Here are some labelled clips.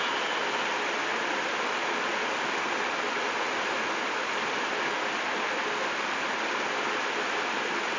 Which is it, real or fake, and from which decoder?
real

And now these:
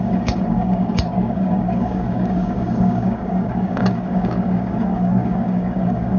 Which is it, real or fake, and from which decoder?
fake, codec, DAC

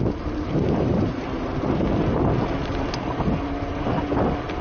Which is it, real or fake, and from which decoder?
real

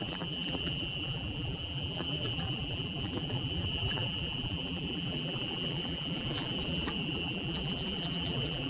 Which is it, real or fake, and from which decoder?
fake, vocoder, BigVGAN v2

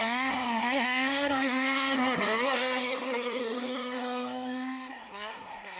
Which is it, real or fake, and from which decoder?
fake, codec, SNAC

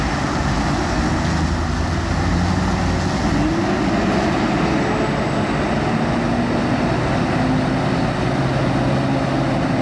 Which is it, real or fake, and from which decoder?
real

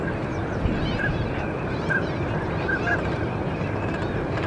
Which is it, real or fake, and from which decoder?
real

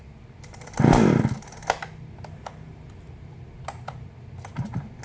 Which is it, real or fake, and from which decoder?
real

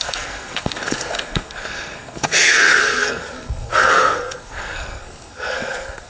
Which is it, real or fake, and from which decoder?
fake, codec, SNAC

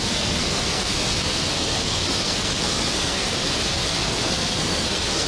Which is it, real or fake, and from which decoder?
fake, codec, SNAC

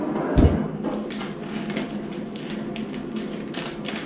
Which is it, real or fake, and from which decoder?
real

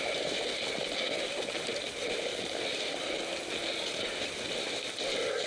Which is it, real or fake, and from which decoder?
real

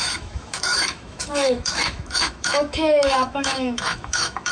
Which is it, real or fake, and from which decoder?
fake, autoencoder, DAC-VAE